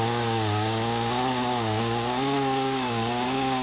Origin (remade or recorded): remade